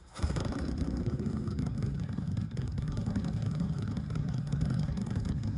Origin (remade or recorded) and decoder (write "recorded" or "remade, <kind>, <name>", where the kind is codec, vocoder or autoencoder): remade, codec, SNAC